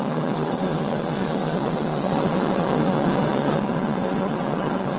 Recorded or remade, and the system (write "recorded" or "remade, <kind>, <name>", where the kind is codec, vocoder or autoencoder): remade, vocoder, WaveNeXt